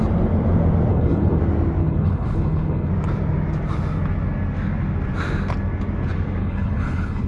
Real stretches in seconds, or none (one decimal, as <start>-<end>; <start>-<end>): 0.0-0.9; 1.4-1.8; 2.9-6.4